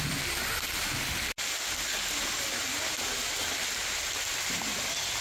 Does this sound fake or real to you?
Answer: real